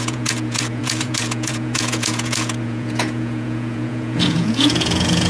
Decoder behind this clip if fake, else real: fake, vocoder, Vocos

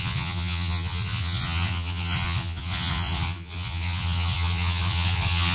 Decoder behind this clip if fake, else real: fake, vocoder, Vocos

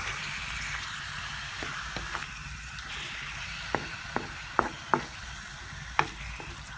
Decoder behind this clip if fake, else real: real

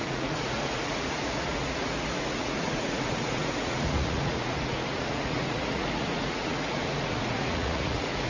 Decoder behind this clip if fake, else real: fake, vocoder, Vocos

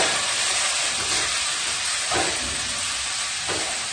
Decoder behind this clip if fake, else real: real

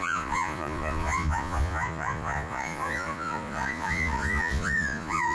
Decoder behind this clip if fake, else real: fake, vocoder, Vocos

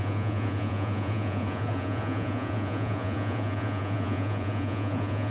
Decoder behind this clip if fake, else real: fake, vocoder, Vocos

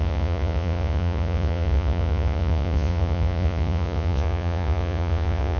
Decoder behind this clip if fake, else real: fake, vocoder, Vocos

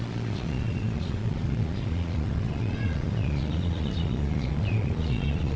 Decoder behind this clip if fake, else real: fake, vocoder, Vocos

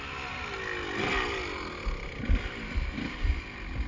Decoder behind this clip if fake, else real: real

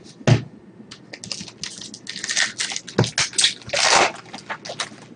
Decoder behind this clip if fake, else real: real